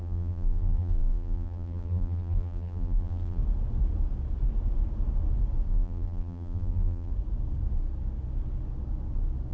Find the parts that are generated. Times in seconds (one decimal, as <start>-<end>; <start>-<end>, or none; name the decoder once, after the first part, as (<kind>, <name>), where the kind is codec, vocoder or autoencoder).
0.0-3.4 (vocoder, BigVGAN v2); 5.7-7.1